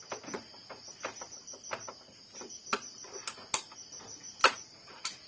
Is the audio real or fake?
real